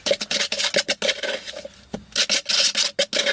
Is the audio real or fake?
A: real